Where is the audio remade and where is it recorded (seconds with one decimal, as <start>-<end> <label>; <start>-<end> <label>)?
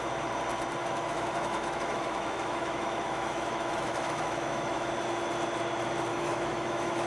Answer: 0.0-0.8 recorded; 0.8-4.9 remade; 4.9-6.1 recorded; 6.1-7.1 remade